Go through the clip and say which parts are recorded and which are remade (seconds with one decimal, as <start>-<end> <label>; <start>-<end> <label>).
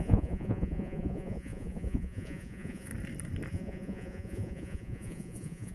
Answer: 0.0-2.9 remade; 2.9-3.5 recorded; 3.5-5.7 remade